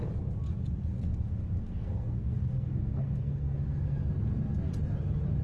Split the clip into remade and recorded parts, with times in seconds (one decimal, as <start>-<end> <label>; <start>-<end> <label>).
0.0-0.9 recorded; 0.9-4.1 remade; 4.1-5.4 recorded